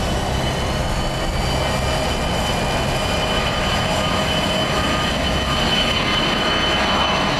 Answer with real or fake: real